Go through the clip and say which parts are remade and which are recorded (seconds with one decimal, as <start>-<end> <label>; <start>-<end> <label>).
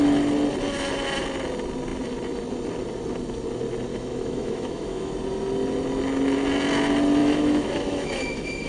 0.0-3.9 recorded; 3.9-5.1 remade; 5.1-7.2 recorded; 7.2-8.7 remade